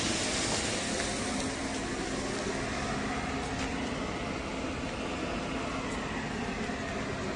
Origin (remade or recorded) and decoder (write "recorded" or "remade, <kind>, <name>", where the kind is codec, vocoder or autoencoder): recorded